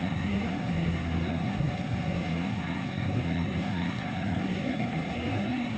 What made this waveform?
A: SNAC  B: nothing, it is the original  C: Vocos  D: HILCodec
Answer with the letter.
A